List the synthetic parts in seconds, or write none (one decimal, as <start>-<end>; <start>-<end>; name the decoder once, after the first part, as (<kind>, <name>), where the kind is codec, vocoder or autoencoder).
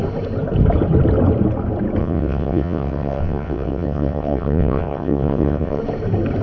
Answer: 2.0-5.8 (vocoder, WaveNeXt)